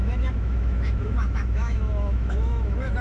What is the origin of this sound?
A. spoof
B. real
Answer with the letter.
A